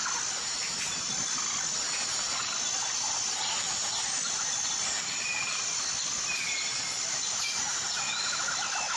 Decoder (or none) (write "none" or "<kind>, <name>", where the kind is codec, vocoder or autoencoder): none